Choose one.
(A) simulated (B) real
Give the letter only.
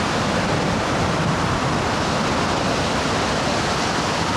B